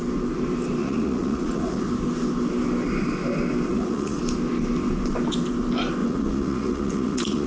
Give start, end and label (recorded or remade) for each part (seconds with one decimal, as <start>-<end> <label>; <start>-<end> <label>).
0.0-0.8 recorded; 0.8-1.8 remade; 1.8-3.7 recorded; 3.7-4.2 remade; 4.2-6.0 recorded; 6.0-7.5 remade